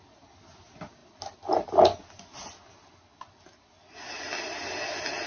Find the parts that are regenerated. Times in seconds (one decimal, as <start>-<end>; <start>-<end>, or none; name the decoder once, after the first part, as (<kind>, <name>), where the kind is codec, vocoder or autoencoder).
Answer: none